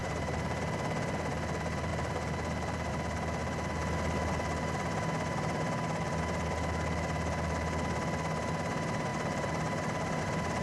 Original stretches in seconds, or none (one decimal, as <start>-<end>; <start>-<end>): 0.6-9.1; 10.2-10.6